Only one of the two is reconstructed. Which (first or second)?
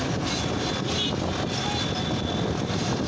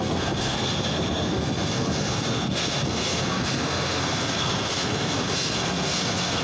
second